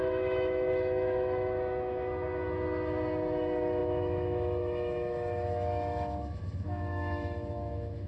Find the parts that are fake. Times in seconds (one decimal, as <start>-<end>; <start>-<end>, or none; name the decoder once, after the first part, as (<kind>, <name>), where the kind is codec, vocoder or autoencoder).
0.0-8.1 (autoencoder, DAC-VAE)